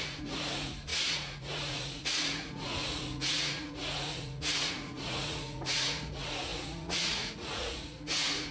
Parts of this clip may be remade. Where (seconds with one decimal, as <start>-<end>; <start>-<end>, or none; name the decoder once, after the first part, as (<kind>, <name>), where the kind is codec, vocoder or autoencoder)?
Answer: 0.0-8.5 (vocoder, Vocos)